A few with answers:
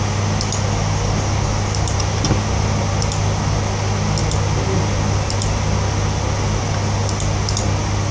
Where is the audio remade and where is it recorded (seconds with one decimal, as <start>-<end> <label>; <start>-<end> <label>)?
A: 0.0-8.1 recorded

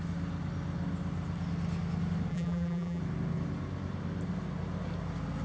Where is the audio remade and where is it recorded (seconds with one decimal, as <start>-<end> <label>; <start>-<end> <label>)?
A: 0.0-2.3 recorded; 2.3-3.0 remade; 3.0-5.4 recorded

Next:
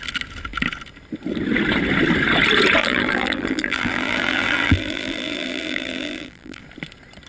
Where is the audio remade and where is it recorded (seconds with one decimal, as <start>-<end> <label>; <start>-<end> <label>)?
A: 0.0-2.8 recorded; 2.8-6.6 remade; 6.6-7.3 recorded